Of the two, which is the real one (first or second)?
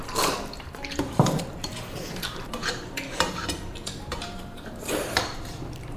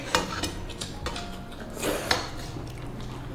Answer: second